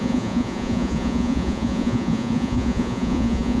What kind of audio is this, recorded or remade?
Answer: remade